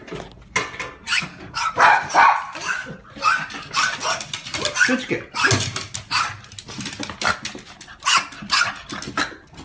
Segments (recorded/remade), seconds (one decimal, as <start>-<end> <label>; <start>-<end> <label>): 0.0-9.6 recorded